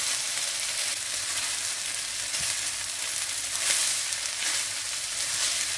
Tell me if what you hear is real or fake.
real